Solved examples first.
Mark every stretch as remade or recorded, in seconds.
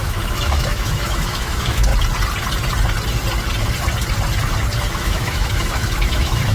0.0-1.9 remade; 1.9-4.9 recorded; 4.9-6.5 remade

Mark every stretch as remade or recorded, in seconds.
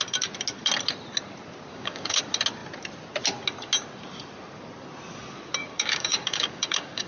0.0-1.7 recorded; 1.7-2.2 remade; 2.2-5.6 recorded; 5.6-7.1 remade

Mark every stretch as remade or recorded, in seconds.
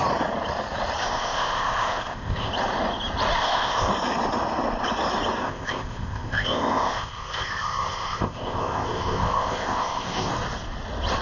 0.0-1.0 recorded; 1.0-2.5 remade; 2.5-3.4 recorded; 3.4-3.9 remade; 3.9-5.4 recorded; 5.4-10.3 remade; 10.3-11.2 recorded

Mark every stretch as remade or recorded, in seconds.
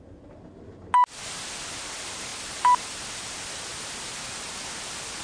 0.0-5.2 recorded